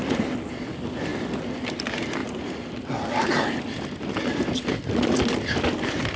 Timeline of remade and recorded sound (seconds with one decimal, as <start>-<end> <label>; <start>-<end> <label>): 0.0-6.2 recorded